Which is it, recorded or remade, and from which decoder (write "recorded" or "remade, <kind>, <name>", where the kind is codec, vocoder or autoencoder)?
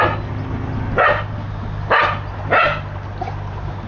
recorded